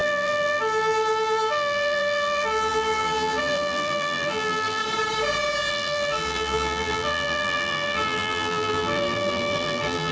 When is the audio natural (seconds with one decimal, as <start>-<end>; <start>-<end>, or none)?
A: 4.8-5.7